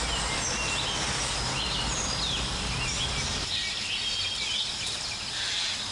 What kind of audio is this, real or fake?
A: real